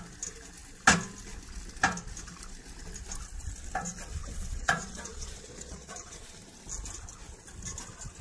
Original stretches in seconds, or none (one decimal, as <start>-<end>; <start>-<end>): 0.0-4.2; 6.3-8.2